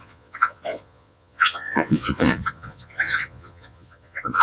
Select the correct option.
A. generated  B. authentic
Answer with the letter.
A